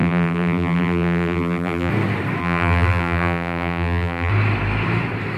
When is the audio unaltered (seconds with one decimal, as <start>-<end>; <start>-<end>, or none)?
1.9-2.4; 4.3-5.4